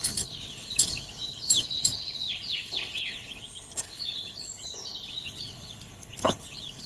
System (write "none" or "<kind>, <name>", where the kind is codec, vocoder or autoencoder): codec, HILCodec